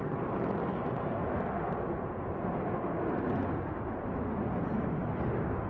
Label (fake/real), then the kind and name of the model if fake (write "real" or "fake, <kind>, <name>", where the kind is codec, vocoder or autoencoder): real